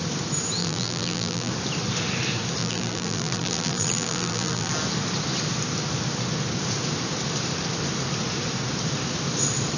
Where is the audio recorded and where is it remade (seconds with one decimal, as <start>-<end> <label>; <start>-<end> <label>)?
0.0-0.6 recorded; 0.6-1.5 remade; 1.5-2.6 recorded; 2.6-4.7 remade; 4.7-9.8 recorded